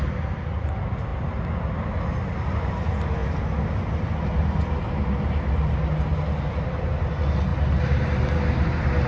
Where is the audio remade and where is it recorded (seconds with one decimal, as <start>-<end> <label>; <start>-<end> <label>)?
0.0-9.1 recorded